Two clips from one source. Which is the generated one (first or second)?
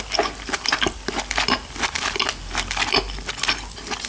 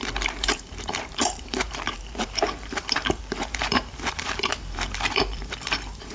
second